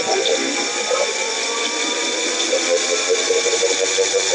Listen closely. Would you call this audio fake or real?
fake